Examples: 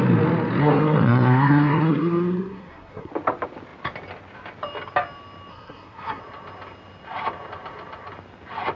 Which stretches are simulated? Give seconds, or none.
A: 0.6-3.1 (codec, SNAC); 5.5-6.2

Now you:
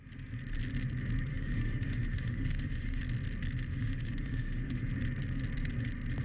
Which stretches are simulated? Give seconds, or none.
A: 1.3-3.0 (autoencoder, DAC-VAE); 3.7-4.9

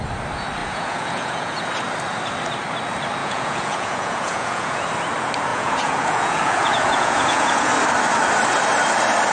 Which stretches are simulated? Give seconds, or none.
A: 0.6-1.6 (vocoder, Vocos); 3.2-4.9; 5.5-7.7

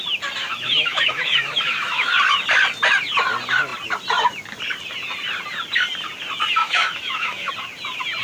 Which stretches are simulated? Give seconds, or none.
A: 0.4-2.1 (autoencoder, DAC-VAE); 6.6-7.5